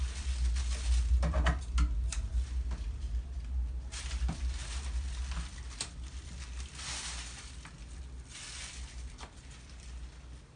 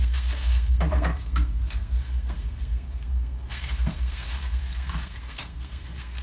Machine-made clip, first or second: second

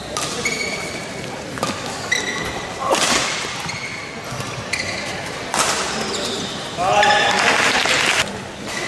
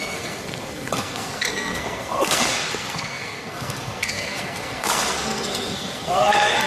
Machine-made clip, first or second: second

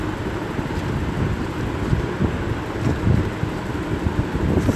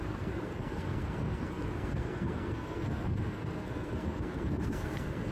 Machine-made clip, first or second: second